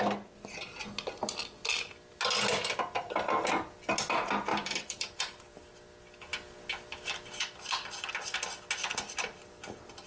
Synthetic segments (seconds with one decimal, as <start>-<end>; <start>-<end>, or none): 4.5-5.7